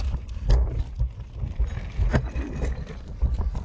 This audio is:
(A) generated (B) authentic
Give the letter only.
B